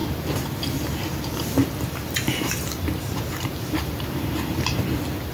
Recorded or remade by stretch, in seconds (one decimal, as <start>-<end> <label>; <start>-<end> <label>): 0.0-1.6 recorded; 1.6-4.8 remade; 4.8-5.3 recorded